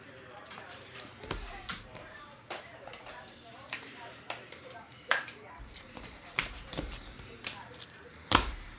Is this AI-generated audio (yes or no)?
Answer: yes